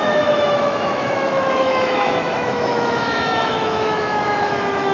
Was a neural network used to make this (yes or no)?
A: yes